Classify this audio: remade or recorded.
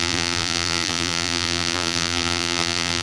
remade